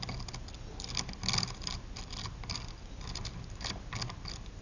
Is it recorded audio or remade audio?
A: recorded